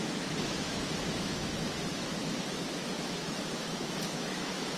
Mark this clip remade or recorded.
remade